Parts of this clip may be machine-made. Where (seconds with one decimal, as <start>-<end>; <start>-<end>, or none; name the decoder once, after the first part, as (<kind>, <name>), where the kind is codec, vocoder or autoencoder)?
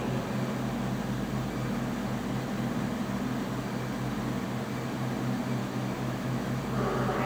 5.6-6.6 (autoencoder, DAC-VAE)